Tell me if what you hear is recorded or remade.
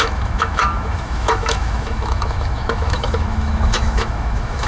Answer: remade